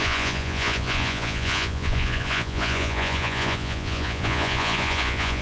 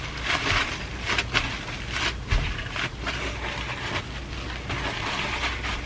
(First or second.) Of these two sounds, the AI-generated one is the first